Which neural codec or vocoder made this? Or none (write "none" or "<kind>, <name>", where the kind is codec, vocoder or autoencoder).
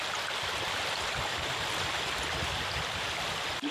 none